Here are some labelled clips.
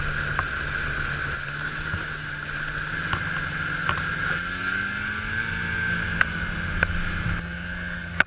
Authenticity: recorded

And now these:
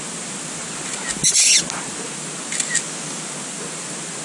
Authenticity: recorded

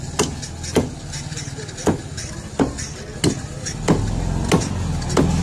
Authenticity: recorded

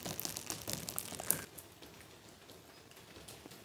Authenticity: recorded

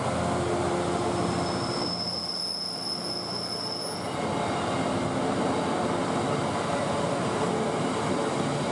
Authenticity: recorded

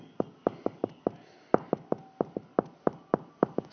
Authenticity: recorded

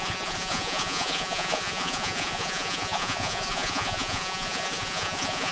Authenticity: remade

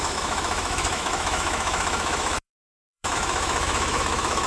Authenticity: remade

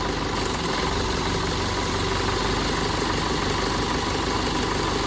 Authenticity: recorded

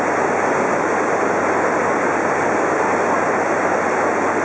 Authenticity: recorded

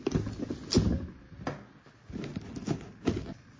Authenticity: recorded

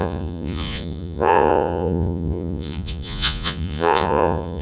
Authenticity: remade